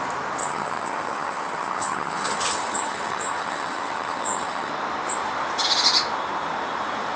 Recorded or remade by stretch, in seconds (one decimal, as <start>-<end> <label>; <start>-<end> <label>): 0.0-0.4 recorded; 0.4-4.7 remade; 4.7-7.2 recorded